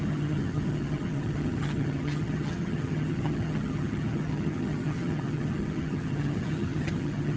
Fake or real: fake